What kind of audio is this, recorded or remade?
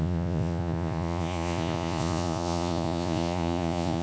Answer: remade